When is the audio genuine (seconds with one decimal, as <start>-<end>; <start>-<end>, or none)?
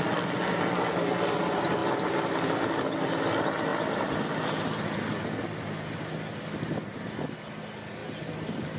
0.0-1.8; 2.7-3.7; 4.6-8.8